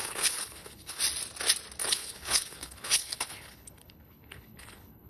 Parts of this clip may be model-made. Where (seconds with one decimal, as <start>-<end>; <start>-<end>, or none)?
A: 0.0-1.0; 1.8-5.1